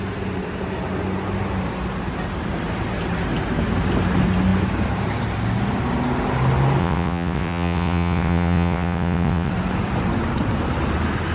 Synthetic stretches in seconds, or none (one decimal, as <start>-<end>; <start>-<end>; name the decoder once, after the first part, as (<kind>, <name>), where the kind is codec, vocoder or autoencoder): 6.8-9.5 (vocoder, WaveNeXt)